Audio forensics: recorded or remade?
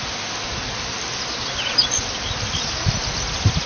recorded